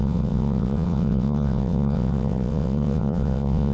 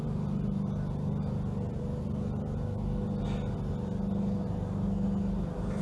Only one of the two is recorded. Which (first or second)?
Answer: second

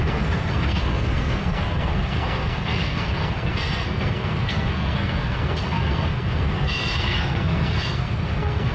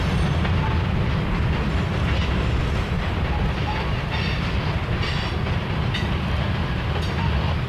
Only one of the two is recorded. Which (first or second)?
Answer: second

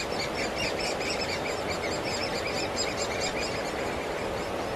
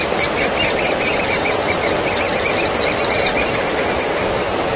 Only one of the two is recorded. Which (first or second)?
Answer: first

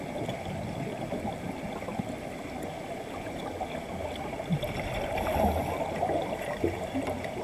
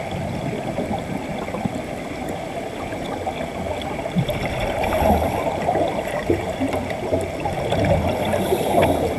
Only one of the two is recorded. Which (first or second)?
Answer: first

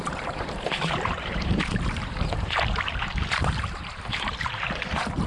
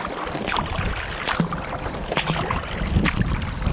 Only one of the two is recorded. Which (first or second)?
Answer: second